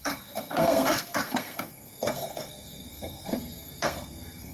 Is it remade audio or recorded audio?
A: remade